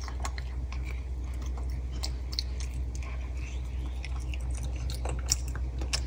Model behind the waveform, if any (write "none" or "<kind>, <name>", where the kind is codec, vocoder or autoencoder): none